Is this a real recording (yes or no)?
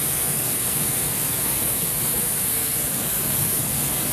no